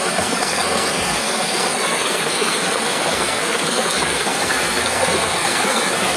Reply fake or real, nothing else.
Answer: fake